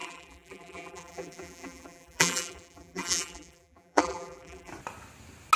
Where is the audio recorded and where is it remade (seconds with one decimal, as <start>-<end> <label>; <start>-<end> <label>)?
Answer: 0.0-4.7 remade; 4.7-5.6 recorded